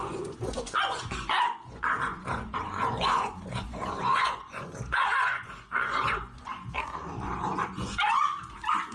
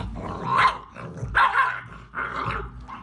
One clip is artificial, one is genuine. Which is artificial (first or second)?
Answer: first